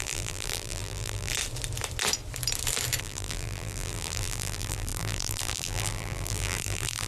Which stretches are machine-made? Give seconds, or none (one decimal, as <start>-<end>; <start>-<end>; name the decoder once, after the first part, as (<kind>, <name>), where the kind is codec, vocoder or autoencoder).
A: 0.0-1.3 (vocoder, BigVGAN v2); 3.0-7.1